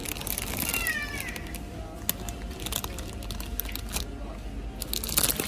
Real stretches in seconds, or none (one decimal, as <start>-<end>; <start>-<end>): 0.0-5.5